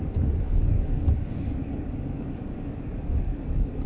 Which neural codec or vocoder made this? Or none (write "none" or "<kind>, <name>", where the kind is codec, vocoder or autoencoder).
codec, DAC